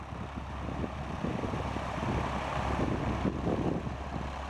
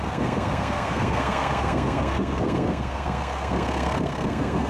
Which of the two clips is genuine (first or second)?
first